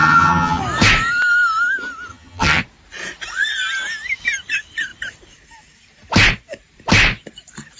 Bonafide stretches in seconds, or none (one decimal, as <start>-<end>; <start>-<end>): 0.6-2.1; 2.6-7.8